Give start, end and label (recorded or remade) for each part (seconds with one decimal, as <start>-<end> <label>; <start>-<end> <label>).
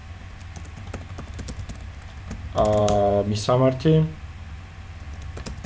0.0-2.8 recorded; 2.8-3.8 remade; 3.8-5.7 recorded